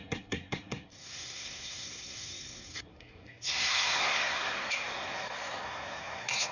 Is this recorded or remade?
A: remade